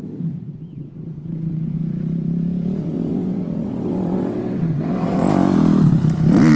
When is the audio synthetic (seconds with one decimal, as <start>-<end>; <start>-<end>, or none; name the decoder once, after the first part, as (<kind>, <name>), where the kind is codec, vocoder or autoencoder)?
0.0-1.8 (vocoder, WaveNeXt); 2.8-5.2